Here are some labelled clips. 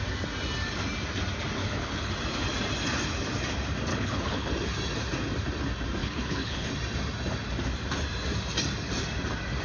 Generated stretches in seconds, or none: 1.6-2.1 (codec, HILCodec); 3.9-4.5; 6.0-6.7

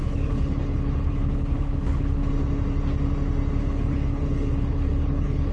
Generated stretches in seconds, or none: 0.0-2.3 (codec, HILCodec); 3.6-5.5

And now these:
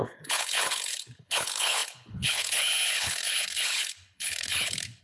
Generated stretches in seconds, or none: 0.0-5.0 (codec, HILCodec)

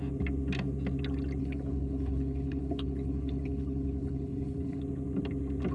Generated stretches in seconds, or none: 1.4-4.8 (codec, HILCodec)

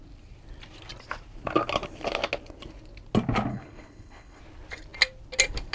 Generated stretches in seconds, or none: 3.5-4.4 (codec, HILCodec)

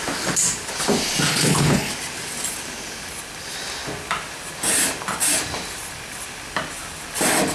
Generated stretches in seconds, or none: 1.3-1.9 (codec, HILCodec)

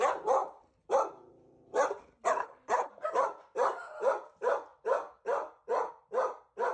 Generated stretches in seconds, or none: 2.4-2.9 (codec, HILCodec)

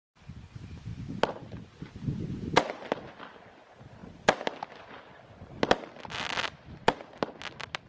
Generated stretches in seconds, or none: none